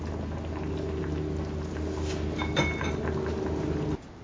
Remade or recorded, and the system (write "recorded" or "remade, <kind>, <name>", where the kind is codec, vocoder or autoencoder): recorded